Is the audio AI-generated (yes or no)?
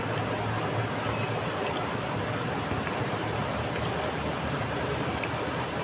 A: no